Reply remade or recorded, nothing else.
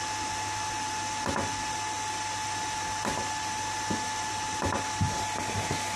recorded